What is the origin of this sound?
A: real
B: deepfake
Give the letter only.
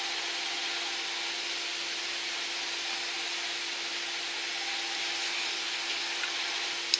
A